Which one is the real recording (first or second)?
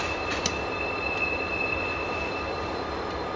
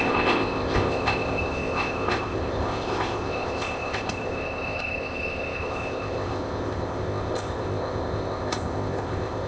first